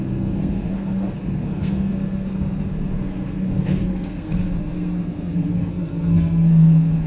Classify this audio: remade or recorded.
remade